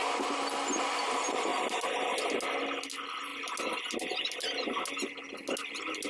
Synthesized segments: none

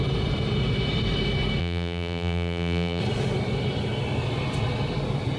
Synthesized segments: 1.6-3.0 (vocoder, BigVGAN v2)

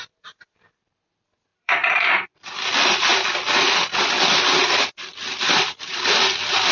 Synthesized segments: 1.5-2.7 (vocoder, BigVGAN v2)

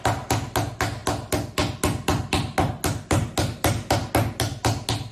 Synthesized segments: none

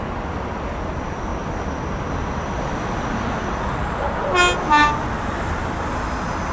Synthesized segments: none

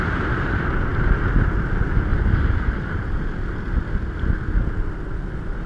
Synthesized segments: 2.1-5.7 (vocoder, BigVGAN v2)

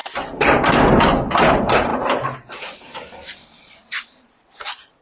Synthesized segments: 1.5-5.0 (vocoder, BigVGAN v2)